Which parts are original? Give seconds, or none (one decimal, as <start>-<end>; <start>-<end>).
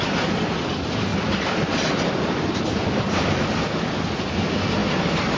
0.0-1.1; 2.9-4.8